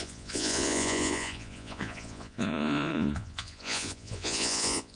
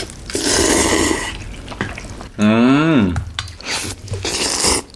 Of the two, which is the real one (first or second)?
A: second